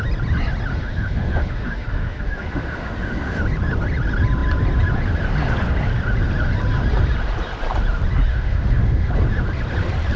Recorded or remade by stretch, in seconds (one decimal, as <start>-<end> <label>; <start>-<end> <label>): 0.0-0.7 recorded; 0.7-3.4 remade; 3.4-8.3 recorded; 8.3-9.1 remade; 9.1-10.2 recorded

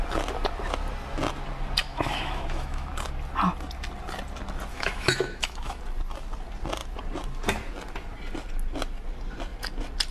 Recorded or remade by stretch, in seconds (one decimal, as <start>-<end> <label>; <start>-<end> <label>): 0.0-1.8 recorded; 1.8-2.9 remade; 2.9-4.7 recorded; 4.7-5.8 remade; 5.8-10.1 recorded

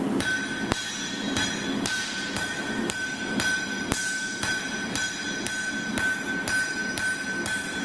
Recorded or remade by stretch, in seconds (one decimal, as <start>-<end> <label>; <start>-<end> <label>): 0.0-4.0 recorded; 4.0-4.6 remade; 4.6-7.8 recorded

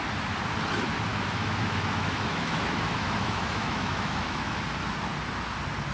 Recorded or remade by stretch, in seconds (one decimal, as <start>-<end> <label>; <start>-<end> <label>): 0.0-1.1 recorded; 1.1-4.6 remade; 4.6-5.9 recorded